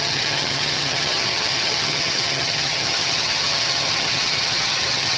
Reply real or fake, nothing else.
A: fake